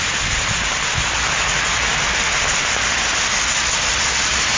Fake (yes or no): no